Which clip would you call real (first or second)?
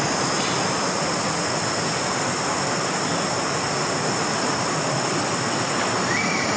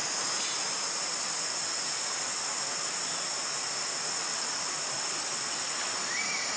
second